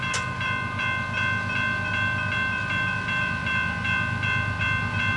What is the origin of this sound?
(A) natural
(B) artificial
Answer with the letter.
A